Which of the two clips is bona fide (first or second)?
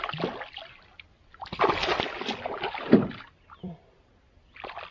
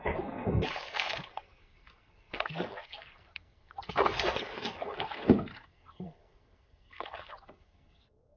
first